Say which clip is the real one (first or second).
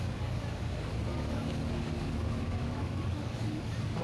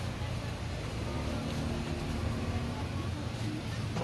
second